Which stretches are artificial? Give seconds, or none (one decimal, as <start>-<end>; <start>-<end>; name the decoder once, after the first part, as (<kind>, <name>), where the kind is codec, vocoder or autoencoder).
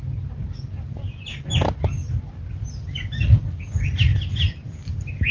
none